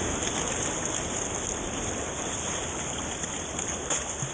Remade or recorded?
recorded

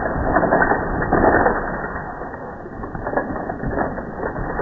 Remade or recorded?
recorded